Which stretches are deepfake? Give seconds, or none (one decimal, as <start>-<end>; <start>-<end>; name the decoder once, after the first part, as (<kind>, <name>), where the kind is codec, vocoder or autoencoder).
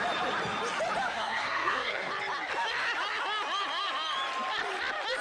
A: 1.1-2.1 (codec, SNAC)